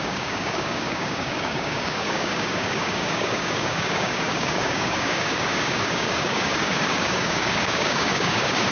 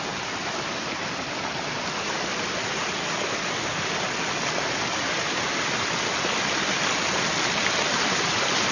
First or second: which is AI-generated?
first